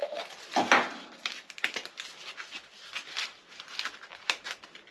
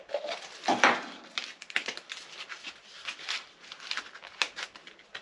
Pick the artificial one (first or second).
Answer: second